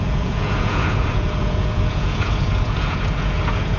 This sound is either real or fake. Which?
fake